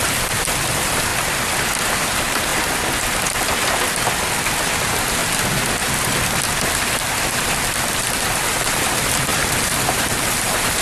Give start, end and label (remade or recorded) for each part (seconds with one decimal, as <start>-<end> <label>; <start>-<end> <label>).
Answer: 0.0-1.1 remade; 1.1-2.0 recorded; 2.0-2.5 remade; 2.5-4.8 recorded; 4.8-5.2 remade; 5.2-8.2 recorded; 8.2-10.8 remade